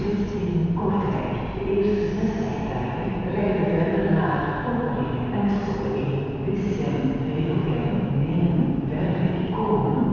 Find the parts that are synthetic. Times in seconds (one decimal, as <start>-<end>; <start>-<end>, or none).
3.4-5.3; 7.6-8.4